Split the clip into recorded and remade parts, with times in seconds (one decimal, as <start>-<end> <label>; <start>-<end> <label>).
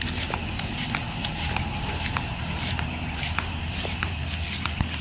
0.0-1.2 recorded; 1.2-4.2 remade; 4.2-5.0 recorded